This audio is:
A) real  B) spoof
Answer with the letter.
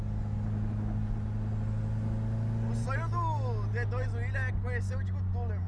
A